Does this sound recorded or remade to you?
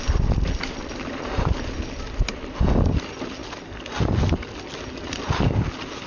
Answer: recorded